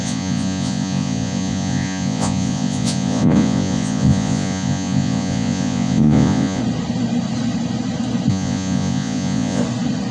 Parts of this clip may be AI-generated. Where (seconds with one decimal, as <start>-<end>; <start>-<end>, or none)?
0.0-6.6; 8.3-9.6